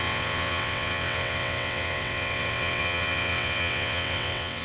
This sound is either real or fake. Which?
fake